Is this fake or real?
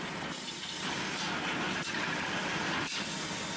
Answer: real